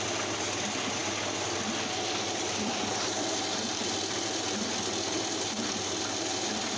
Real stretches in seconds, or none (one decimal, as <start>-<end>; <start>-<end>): 0.0-6.8